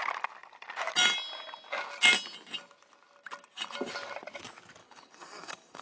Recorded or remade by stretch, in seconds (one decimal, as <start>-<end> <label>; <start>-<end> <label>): 0.0-4.8 recorded; 4.8-5.8 remade

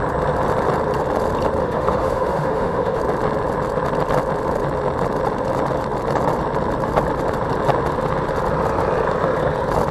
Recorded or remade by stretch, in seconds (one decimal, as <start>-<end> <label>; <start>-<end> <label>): 0.0-1.6 recorded; 1.6-3.0 remade; 3.0-9.9 recorded

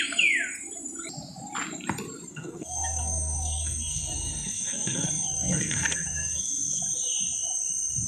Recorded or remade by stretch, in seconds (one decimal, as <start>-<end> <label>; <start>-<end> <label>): 0.0-2.3 recorded; 2.3-6.8 remade; 6.8-8.1 recorded

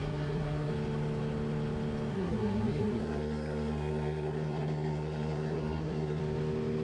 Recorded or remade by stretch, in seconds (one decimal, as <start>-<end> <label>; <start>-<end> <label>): 0.0-0.7 remade; 0.7-2.1 recorded; 2.1-6.2 remade; 6.2-6.8 recorded

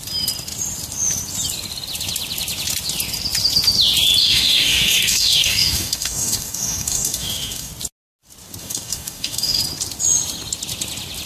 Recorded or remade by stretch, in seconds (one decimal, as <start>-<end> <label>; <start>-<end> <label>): 0.0-4.2 recorded; 4.2-7.7 remade; 7.7-8.6 recorded; 8.6-9.6 remade; 9.6-11.3 recorded